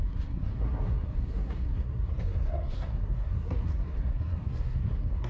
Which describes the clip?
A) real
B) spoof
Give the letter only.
B